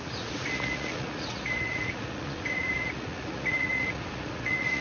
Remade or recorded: remade